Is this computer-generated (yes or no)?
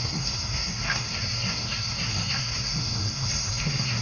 yes